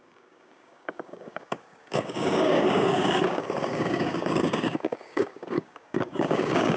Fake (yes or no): yes